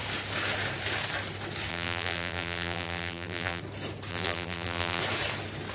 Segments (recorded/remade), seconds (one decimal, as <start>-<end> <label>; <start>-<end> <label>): 0.0-1.7 recorded; 1.7-3.6 remade; 3.6-4.1 recorded; 4.1-5.0 remade; 5.0-5.7 recorded